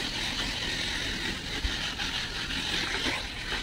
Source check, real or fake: real